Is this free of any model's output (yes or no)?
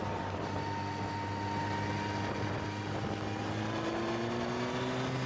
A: yes